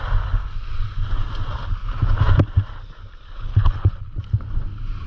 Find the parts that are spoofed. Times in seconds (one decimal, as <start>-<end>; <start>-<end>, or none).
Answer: 3.5-4.2